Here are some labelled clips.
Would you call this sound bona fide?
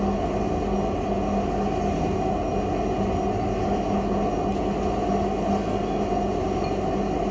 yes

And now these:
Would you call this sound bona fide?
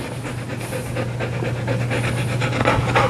yes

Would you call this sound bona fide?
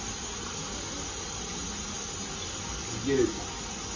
yes